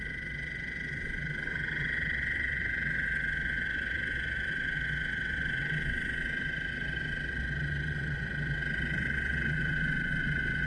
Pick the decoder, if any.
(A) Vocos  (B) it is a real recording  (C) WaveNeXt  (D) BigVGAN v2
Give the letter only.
C